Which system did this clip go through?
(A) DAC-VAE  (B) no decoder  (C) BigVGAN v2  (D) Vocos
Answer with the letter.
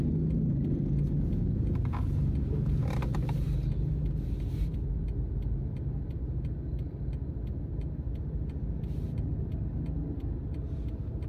B